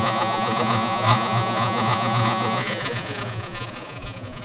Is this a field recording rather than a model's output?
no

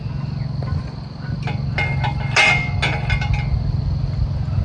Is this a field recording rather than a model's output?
yes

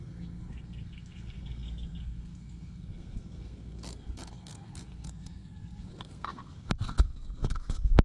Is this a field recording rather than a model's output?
no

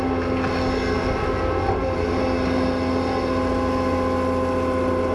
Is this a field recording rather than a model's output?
yes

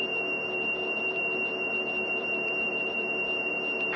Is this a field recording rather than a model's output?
no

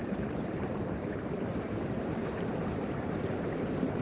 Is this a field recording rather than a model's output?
no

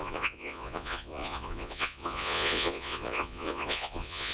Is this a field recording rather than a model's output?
no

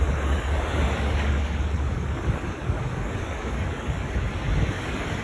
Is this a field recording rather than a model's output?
no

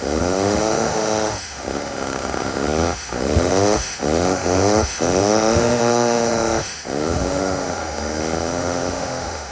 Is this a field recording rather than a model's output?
no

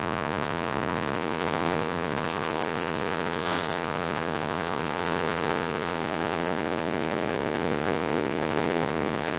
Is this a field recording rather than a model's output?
no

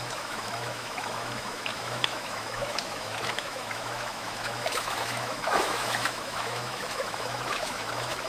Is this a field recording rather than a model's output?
no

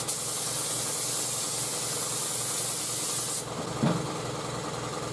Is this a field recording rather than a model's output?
yes